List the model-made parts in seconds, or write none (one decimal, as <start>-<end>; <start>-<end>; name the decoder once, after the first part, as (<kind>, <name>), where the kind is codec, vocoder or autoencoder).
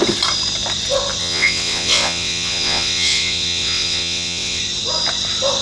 1.2-4.6 (vocoder, WaveNeXt)